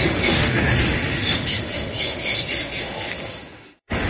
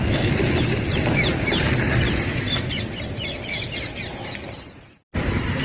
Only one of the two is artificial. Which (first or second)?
first